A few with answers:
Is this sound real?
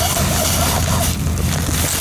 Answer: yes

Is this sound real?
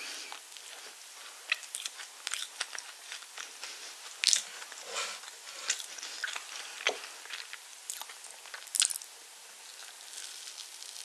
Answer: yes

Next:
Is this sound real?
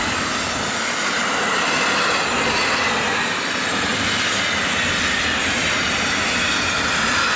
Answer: yes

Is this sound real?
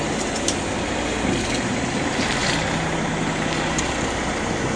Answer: yes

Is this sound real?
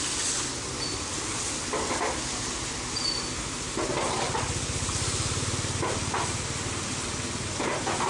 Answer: yes